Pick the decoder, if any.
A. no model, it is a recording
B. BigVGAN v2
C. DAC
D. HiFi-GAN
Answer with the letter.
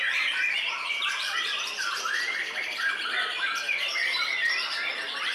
B